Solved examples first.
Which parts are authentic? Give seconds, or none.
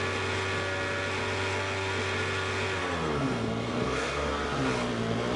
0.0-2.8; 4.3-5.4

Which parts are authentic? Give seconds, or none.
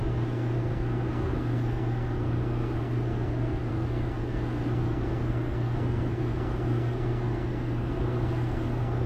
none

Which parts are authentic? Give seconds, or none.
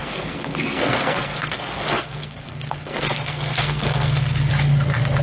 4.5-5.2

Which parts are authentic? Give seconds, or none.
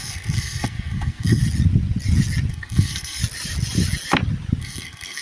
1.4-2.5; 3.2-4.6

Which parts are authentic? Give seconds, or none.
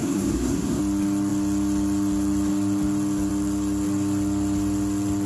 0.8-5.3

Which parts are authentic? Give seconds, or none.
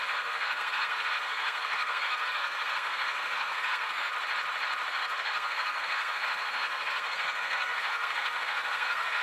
4.1-4.9